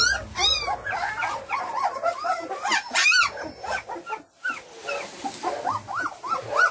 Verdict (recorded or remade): recorded